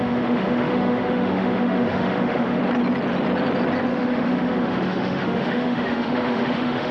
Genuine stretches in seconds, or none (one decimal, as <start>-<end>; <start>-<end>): 2.6-3.9